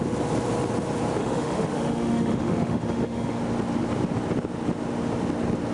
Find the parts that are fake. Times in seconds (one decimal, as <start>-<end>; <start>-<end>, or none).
1.2-3.4